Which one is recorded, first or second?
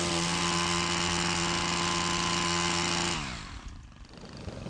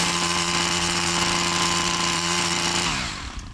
first